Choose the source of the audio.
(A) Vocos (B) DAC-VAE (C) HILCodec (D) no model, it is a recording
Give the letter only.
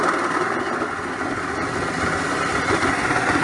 D